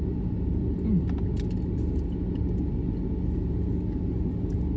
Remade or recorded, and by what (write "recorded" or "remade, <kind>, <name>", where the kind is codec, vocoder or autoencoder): recorded